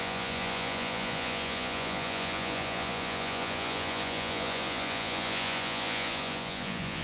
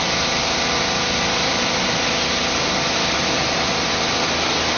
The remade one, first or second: first